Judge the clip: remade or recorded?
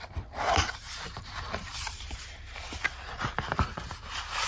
remade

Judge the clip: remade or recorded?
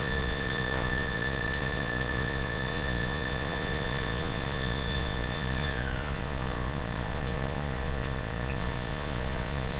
remade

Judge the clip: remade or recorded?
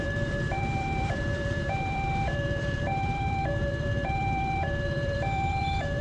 remade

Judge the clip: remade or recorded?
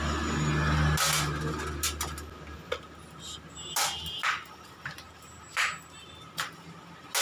recorded